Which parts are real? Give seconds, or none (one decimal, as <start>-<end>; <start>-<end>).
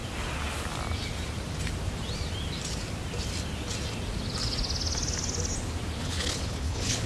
0.0-6.0